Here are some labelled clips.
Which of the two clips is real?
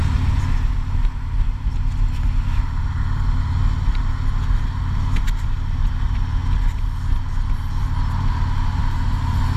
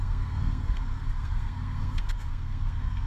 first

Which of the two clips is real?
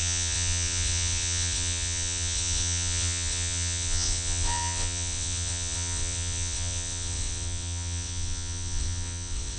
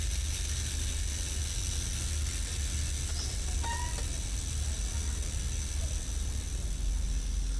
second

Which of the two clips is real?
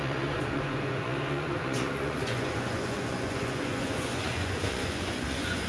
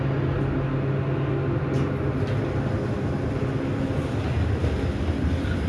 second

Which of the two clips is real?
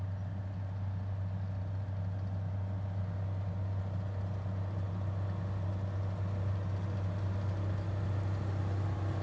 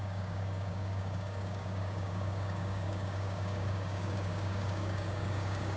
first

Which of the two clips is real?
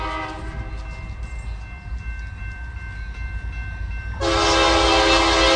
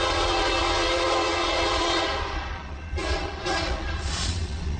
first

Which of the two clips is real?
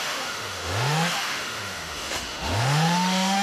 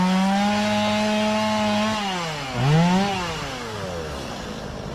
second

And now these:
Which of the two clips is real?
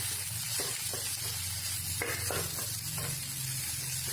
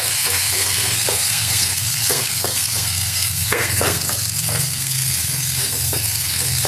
first